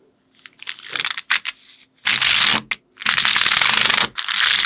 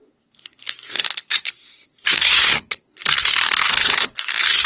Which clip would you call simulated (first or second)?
second